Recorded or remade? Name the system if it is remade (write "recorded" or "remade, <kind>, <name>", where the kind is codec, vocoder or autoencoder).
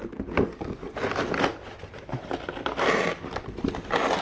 recorded